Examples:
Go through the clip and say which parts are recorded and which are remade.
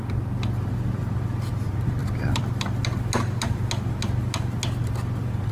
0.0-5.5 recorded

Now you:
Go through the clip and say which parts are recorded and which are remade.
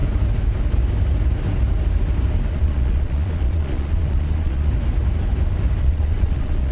0.0-2.5 recorded; 2.5-4.7 remade; 4.7-5.8 recorded; 5.8-6.7 remade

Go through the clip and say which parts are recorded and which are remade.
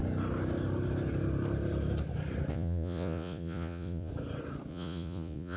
0.0-2.5 recorded; 2.5-4.1 remade; 4.1-4.7 recorded; 4.7-5.6 remade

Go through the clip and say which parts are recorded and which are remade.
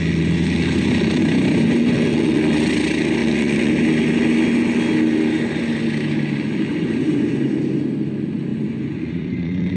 0.0-1.2 recorded; 1.2-2.4 remade; 2.4-3.2 recorded; 3.2-3.7 remade; 3.7-6.7 recorded; 6.7-7.5 remade; 7.5-8.5 recorded; 8.5-9.8 remade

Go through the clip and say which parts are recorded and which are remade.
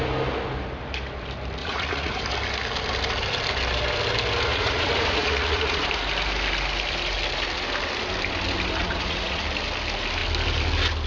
0.0-1.6 recorded; 1.6-2.2 remade; 2.2-4.5 recorded; 4.5-5.8 remade; 5.8-8.8 recorded; 8.8-9.4 remade; 9.4-11.1 recorded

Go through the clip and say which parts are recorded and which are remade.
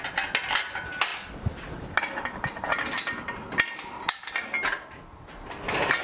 0.0-6.0 recorded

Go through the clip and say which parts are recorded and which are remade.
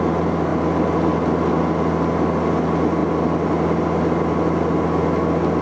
0.0-5.6 recorded